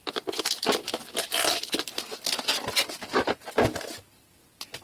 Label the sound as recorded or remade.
recorded